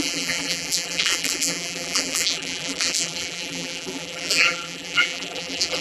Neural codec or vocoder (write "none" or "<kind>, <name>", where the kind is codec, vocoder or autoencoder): vocoder, BigVGAN v2